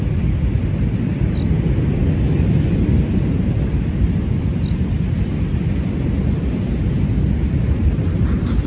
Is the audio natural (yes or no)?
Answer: yes